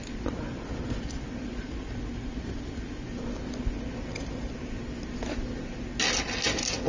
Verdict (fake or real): real